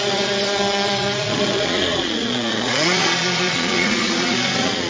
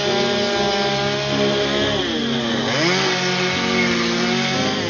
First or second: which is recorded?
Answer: second